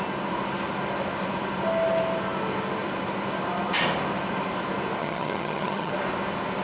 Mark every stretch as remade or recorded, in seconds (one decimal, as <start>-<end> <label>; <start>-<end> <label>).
0.0-5.0 recorded; 5.0-5.9 remade; 5.9-6.6 recorded